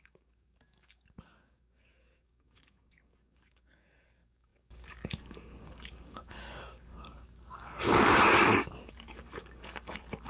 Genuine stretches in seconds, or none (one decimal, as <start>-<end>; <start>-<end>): none